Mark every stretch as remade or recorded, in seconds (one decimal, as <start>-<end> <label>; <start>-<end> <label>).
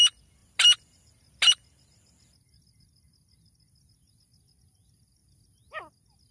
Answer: 0.0-6.3 recorded